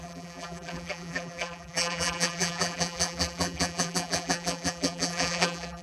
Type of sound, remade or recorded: remade